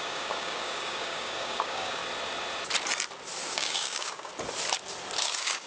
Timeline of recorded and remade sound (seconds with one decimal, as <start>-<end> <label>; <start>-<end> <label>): 0.0-2.0 remade; 2.0-3.4 recorded; 3.4-4.3 remade; 4.3-5.2 recorded; 5.2-5.7 remade